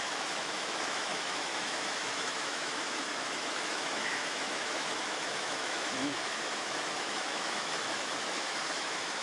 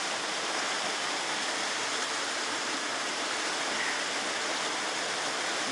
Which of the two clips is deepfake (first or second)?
first